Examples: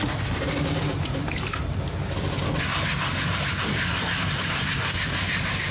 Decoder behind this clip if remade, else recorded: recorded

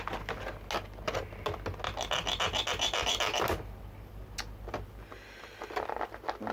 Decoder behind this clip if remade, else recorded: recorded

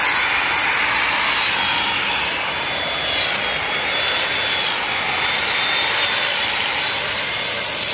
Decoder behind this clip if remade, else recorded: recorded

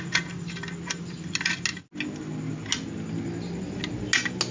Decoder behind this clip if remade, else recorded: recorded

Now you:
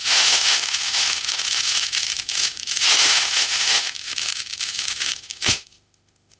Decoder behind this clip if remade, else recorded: remade, autoencoder, DAC-VAE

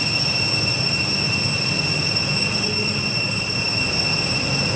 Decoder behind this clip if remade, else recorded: recorded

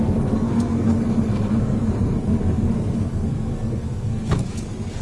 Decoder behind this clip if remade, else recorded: remade, codec, SNAC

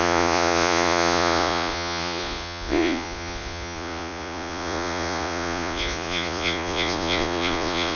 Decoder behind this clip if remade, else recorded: remade, vocoder, Vocos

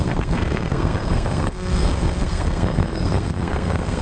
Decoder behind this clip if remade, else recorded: remade, codec, SNAC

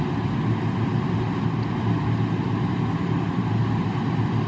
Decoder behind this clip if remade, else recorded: recorded